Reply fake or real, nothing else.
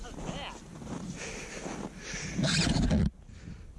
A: real